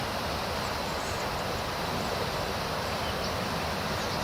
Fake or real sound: real